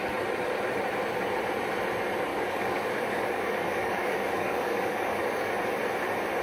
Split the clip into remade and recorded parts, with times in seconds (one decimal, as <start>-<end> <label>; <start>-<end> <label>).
0.0-2.3 recorded; 2.3-5.5 remade; 5.5-6.4 recorded